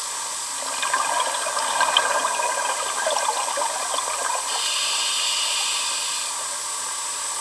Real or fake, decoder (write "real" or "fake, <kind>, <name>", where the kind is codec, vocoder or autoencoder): real